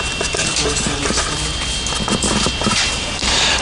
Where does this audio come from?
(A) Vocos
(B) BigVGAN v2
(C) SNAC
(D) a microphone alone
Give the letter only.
D